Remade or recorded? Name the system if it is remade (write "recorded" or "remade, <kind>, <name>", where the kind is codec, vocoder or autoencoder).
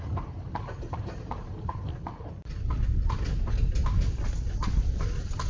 recorded